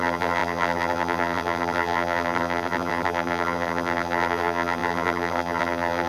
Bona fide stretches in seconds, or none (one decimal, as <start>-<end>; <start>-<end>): none